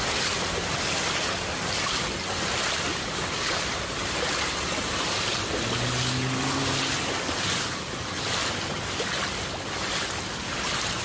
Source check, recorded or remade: recorded